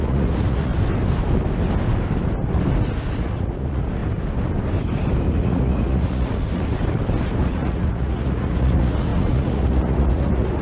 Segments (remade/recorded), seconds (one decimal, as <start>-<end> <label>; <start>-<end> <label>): 0.0-0.7 remade; 0.7-3.1 recorded; 3.1-4.0 remade; 4.0-5.3 recorded; 5.3-6.8 remade; 6.8-7.4 recorded; 7.4-10.6 remade